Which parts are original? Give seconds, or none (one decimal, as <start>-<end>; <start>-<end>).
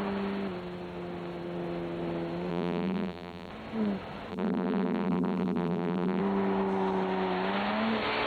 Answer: 0.0-2.5; 3.5-4.3; 6.2-8.3